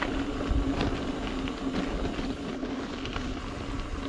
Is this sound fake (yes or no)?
no